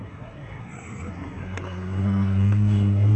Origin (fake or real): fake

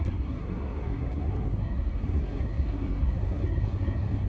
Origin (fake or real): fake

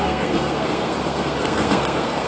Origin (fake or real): fake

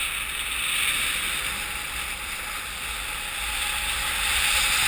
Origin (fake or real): real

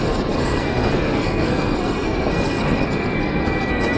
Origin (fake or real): fake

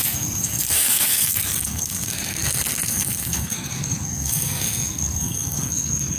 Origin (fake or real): fake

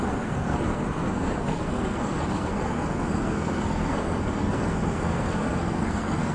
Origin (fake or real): fake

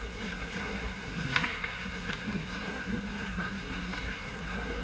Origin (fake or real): fake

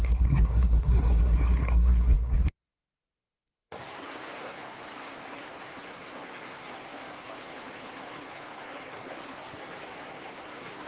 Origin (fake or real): fake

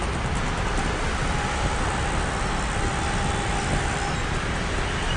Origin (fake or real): real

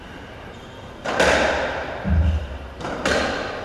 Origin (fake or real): real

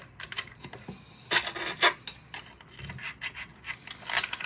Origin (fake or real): real